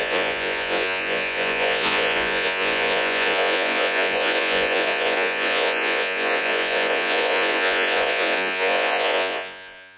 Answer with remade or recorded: remade